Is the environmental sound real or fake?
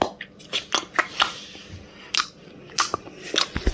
real